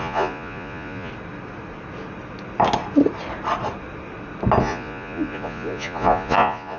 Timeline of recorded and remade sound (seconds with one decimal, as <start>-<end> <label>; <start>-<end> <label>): 0.0-1.1 remade; 1.1-4.6 recorded; 4.6-6.8 remade

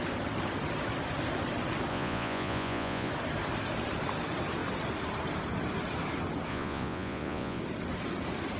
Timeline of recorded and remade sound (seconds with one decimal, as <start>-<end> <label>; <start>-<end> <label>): 0.0-1.9 recorded; 1.9-3.1 remade; 3.1-6.5 recorded; 6.5-7.6 remade; 7.6-8.6 recorded